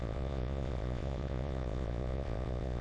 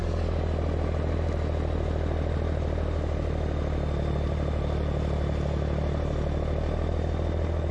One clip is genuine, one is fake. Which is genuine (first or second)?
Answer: second